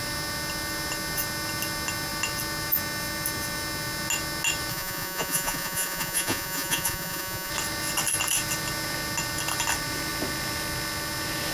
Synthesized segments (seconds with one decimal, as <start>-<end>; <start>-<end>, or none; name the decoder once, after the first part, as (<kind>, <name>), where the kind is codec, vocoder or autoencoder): 4.7-7.5 (vocoder, Vocos)